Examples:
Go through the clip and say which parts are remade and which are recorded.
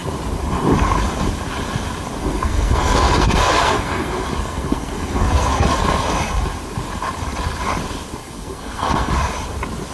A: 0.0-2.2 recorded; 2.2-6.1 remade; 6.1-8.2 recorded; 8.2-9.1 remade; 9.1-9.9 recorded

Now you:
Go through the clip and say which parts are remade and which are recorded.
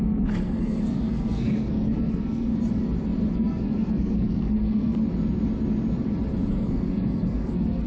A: 0.0-2.5 remade; 2.5-3.3 recorded; 3.3-5.0 remade; 5.0-6.5 recorded; 6.5-7.9 remade